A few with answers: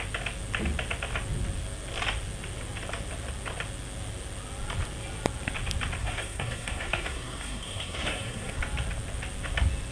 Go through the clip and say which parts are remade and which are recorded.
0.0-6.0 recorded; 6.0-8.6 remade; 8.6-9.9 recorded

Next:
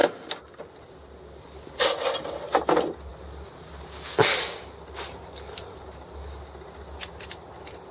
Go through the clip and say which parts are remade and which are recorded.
0.0-7.9 recorded

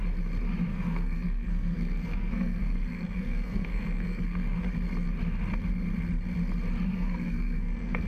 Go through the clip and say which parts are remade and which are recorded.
0.0-0.7 recorded; 0.7-4.6 remade; 4.6-6.9 recorded; 6.9-8.1 remade

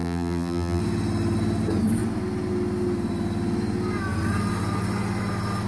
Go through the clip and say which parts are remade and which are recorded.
0.0-0.8 remade; 0.8-5.7 recorded